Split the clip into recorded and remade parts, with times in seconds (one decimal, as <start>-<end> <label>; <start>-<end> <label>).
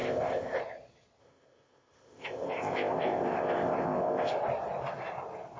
0.0-0.6 remade; 0.6-1.2 recorded; 1.2-4.3 remade; 4.3-5.6 recorded